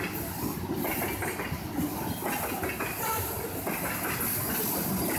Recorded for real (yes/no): yes